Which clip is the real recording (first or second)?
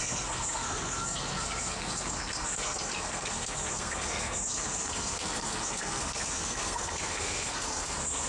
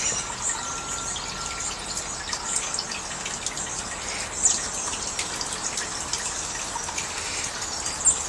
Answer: second